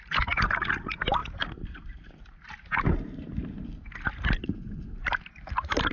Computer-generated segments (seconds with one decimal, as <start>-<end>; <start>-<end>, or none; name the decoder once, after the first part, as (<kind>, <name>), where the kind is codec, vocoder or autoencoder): none